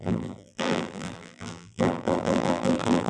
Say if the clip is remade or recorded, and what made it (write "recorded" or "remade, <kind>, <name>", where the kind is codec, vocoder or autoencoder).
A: remade, vocoder, BigVGAN v2